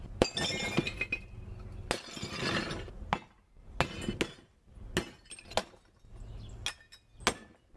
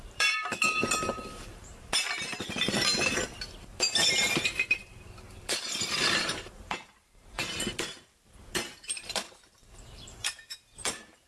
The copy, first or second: second